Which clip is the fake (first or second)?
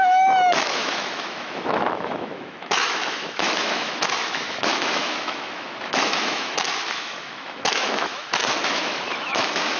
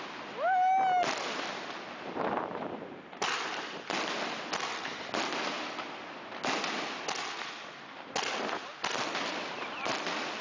first